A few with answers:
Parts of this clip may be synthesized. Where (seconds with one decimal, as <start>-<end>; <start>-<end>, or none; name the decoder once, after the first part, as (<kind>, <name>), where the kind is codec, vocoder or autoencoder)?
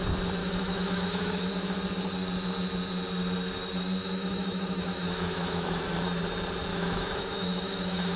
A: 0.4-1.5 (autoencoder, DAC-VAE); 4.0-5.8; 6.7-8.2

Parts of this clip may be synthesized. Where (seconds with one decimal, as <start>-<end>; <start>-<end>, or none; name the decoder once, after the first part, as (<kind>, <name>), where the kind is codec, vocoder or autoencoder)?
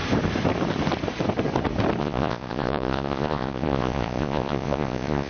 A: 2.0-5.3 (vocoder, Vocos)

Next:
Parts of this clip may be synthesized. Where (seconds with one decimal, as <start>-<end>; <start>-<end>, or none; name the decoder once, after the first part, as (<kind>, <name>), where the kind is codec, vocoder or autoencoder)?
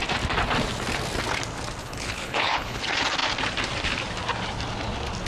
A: 1.8-2.8 (codec, HILCodec)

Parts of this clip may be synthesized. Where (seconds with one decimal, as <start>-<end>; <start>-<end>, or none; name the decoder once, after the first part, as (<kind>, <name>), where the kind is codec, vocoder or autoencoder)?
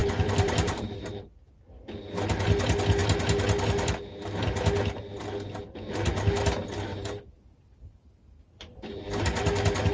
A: 0.0-2.0 (vocoder, BigVGAN v2); 6.9-9.0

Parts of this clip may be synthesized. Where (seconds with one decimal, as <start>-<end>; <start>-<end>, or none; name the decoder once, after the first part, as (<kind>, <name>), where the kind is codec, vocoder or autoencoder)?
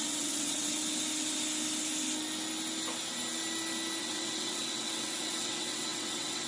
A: 0.0-0.8 (vocoder, WaveNeXt); 4.0-6.5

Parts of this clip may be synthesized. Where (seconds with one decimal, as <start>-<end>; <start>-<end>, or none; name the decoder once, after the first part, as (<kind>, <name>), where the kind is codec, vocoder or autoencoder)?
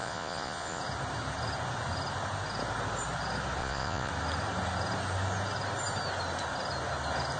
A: 0.0-0.8 (vocoder, Vocos); 3.6-4.1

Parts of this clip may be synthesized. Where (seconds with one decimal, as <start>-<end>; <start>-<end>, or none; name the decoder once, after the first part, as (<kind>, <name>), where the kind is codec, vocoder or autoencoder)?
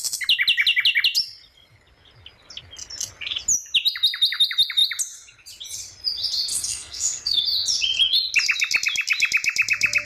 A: 6.5-7.4 (codec, SNAC)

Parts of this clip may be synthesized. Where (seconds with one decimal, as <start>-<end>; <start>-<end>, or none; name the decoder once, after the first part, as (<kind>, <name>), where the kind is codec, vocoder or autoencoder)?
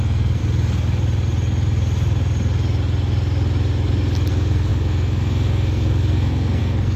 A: 0.0-0.4 (codec, SNAC); 4.3-7.0